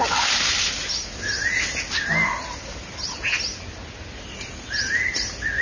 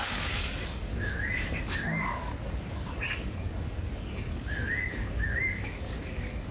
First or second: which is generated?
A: second